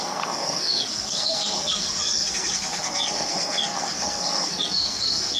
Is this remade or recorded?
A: remade